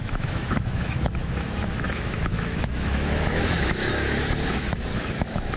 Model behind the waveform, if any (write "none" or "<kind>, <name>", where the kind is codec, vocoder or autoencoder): autoencoder, DAC-VAE